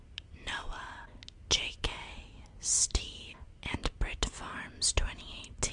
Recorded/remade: recorded